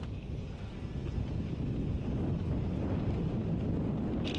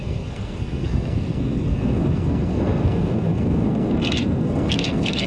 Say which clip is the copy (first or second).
second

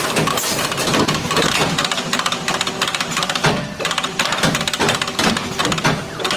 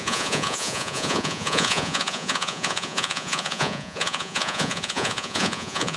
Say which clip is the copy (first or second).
second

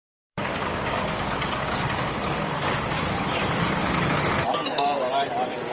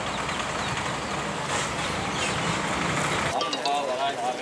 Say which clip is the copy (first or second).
first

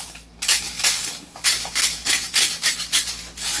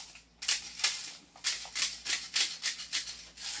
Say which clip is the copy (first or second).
first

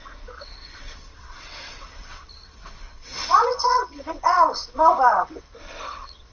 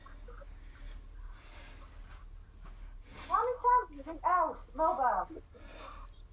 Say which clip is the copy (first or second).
first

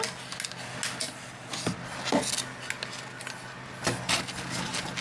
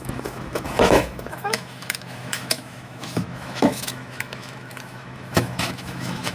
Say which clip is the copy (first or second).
second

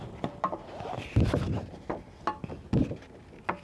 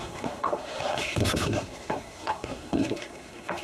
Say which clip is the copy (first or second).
second